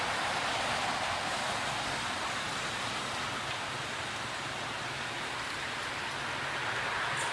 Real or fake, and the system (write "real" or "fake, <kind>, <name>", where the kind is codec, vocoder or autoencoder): real